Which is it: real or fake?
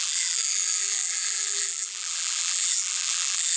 fake